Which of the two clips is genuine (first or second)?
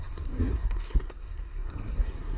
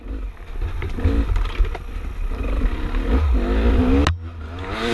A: second